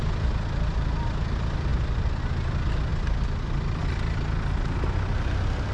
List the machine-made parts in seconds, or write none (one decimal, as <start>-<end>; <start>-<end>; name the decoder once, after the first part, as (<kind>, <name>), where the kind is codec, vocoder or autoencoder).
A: none